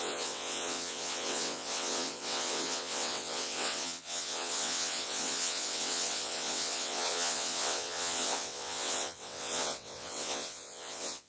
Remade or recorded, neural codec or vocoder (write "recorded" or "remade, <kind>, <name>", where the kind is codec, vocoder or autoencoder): remade, vocoder, WaveNeXt